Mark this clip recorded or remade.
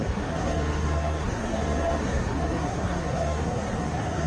remade